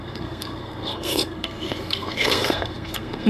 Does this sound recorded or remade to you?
remade